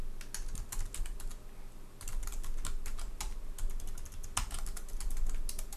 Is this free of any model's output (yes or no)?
yes